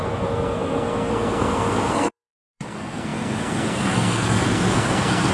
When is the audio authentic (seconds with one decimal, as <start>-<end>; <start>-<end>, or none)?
none